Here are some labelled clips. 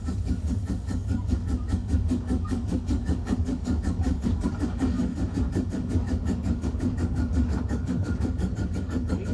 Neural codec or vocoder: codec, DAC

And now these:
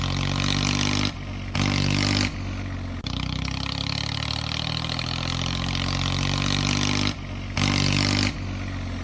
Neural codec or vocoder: none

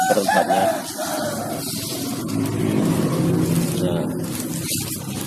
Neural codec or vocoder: none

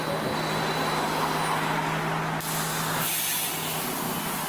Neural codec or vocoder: none